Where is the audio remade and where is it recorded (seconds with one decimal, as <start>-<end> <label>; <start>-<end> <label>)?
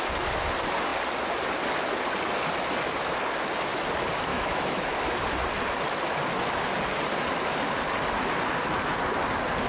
0.0-4.3 recorded; 4.3-5.1 remade; 5.1-9.7 recorded